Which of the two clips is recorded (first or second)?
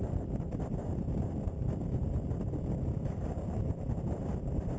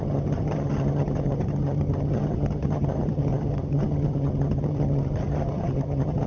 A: first